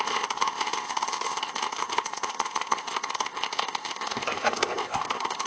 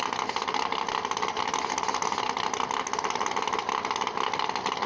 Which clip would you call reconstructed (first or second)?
first